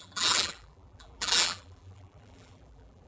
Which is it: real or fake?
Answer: fake